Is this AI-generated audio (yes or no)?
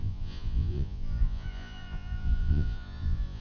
yes